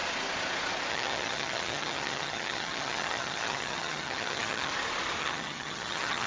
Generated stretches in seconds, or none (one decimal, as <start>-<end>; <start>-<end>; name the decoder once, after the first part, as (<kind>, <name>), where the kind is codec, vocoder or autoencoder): 0.9-4.7 (vocoder, HiFi-GAN); 5.2-6.3